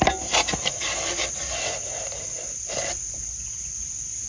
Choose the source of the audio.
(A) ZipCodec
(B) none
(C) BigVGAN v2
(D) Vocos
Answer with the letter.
B